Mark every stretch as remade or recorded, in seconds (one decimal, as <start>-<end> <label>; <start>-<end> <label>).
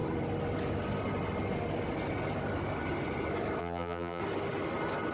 0.0-3.6 recorded; 3.6-4.2 remade; 4.2-5.1 recorded